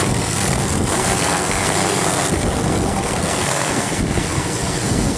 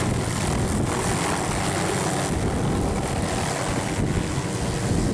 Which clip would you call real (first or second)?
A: second